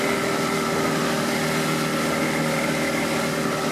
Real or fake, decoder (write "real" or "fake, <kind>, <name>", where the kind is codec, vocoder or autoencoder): real